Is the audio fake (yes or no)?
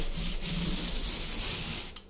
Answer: no